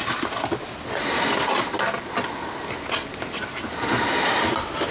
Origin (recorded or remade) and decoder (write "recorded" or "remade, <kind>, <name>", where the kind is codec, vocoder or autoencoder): recorded